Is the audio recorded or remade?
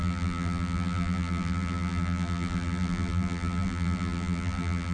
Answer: remade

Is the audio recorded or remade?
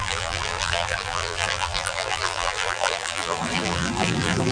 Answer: remade